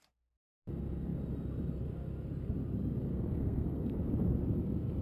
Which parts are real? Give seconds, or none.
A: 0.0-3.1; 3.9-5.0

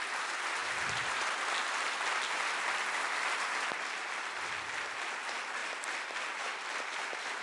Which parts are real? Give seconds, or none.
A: 0.0-5.6; 6.4-7.4

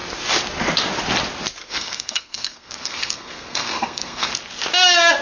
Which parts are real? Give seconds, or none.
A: 0.0-1.6; 4.3-5.2

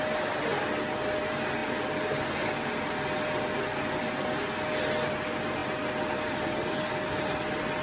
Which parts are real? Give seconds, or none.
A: 0.0-7.8